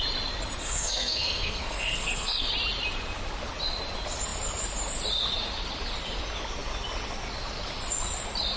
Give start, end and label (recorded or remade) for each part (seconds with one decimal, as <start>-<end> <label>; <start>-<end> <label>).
0.0-0.6 recorded; 0.6-2.5 remade; 2.5-8.6 recorded